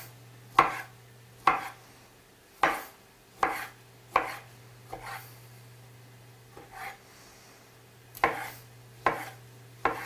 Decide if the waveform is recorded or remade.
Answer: recorded